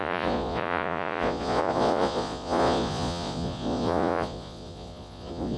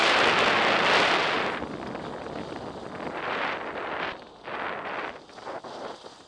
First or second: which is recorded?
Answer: second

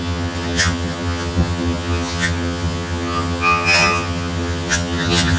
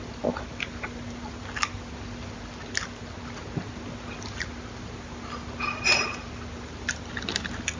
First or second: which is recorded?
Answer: second